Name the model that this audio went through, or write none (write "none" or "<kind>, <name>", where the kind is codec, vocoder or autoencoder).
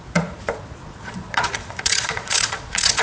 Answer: vocoder, Vocos